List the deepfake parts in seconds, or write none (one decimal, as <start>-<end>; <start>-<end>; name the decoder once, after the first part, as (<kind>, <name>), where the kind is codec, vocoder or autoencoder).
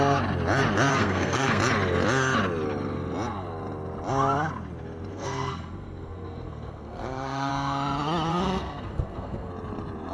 0.9-1.6 (codec, SNAC); 5.1-7.5; 8.3-9.5